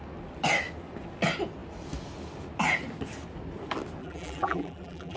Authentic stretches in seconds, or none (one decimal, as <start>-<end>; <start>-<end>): 0.0-4.0